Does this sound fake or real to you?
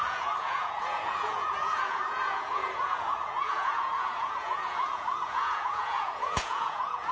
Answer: fake